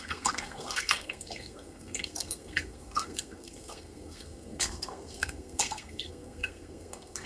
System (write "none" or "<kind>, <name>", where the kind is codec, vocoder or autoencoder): codec, SNAC